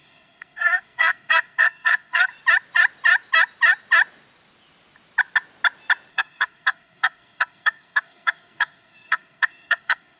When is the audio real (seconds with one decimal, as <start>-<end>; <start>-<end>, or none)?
2.3-6.1